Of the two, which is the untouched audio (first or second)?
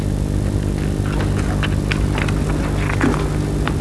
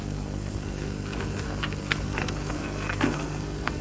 first